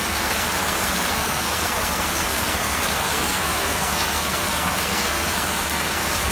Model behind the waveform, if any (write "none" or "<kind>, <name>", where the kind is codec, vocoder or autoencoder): codec, SNAC